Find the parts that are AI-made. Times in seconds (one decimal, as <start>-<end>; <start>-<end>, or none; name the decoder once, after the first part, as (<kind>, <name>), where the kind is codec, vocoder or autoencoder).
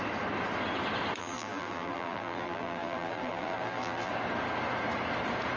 1.2-4.1 (vocoder, BigVGAN v2)